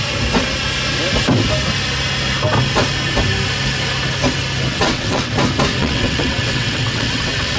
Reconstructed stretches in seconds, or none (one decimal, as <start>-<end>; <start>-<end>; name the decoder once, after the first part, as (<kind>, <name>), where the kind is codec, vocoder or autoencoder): 4.7-5.3 (vocoder, WaveNeXt); 5.8-7.6